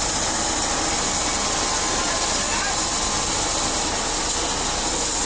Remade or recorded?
recorded